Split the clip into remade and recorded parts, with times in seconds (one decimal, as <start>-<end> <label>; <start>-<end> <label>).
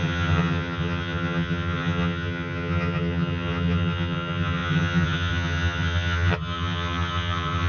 0.0-7.7 remade